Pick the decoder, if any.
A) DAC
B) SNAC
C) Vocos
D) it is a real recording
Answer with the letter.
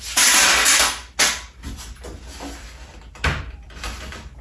D